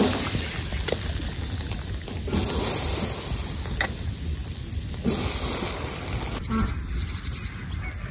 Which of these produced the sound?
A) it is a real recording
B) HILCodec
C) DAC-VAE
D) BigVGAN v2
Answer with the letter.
A